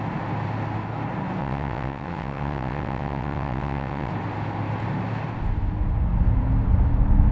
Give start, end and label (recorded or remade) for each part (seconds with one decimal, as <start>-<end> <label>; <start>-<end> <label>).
0.0-1.4 recorded; 1.4-4.1 remade; 4.1-7.3 recorded